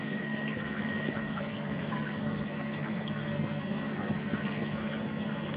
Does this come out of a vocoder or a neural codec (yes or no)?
yes